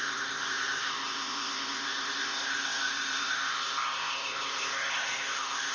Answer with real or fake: fake